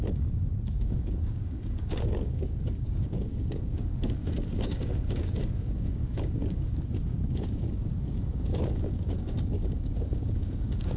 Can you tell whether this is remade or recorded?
remade